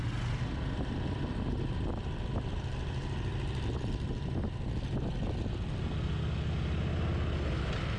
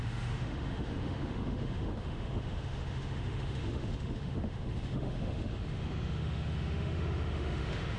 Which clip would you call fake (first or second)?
second